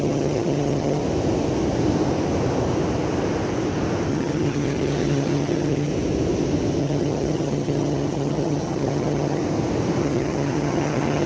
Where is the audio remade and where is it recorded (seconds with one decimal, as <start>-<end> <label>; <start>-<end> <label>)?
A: 0.0-1.0 remade; 1.0-4.1 recorded; 4.1-5.9 remade; 5.9-6.8 recorded; 6.8-9.4 remade; 9.4-10.0 recorded; 10.0-11.3 remade